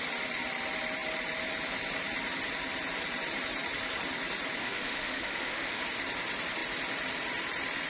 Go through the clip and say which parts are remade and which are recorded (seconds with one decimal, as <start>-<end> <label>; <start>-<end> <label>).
0.0-4.6 recorded; 4.6-5.8 remade; 5.8-7.9 recorded